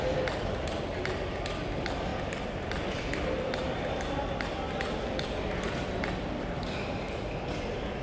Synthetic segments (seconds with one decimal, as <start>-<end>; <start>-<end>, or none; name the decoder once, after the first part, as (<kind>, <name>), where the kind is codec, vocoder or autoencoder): 2.1-4.3 (vocoder, BigVGAN v2)